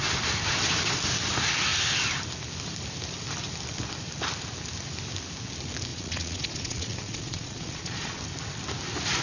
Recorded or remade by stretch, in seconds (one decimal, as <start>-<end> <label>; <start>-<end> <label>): 0.0-5.9 recorded; 5.9-8.2 remade; 8.2-9.2 recorded